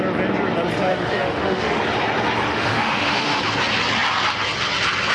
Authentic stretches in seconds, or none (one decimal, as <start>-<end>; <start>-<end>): 0.0-0.9; 1.8-2.5; 3.4-5.1